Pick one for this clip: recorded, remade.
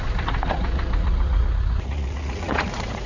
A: remade